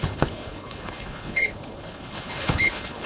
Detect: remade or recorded remade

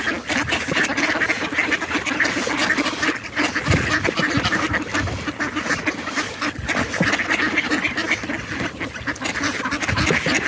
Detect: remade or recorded recorded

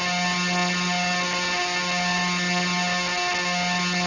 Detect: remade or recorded recorded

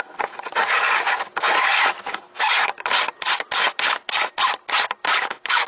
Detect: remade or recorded recorded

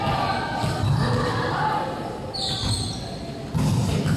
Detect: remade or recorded recorded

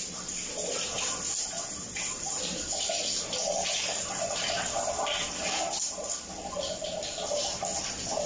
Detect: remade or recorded recorded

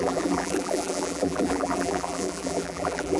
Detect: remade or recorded remade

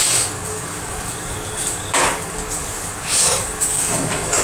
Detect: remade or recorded remade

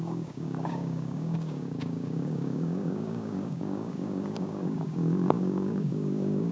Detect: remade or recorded remade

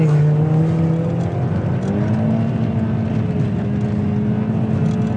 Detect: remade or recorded recorded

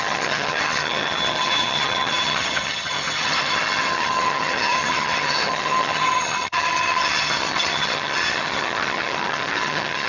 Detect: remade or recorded remade